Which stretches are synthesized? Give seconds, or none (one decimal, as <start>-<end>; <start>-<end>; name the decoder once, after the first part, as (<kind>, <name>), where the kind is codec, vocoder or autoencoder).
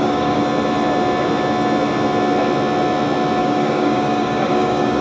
0.0-0.4 (codec, DAC); 3.4-5.0